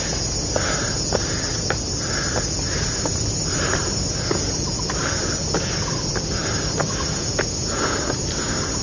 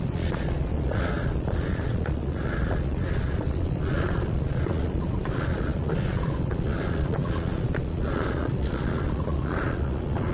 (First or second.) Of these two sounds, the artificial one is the second